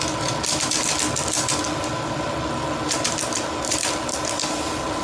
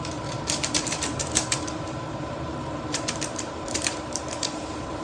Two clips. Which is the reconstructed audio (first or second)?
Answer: second